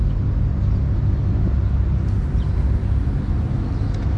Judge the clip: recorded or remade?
recorded